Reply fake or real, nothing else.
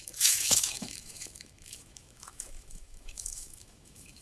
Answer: fake